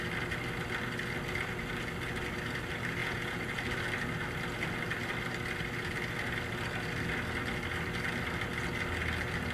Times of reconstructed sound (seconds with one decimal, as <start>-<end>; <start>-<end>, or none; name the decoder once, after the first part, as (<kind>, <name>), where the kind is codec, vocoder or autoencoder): 3.0-3.6 (vocoder, Vocos)